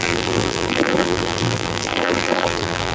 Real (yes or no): no